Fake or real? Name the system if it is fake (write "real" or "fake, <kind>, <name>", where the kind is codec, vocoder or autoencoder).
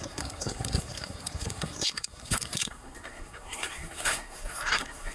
fake, codec, SNAC